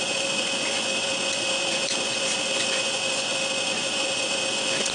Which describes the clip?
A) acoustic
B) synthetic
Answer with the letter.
B